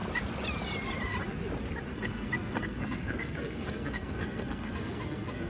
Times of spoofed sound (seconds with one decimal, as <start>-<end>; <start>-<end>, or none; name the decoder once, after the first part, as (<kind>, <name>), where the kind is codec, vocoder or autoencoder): 1.9-5.5 (codec, SNAC)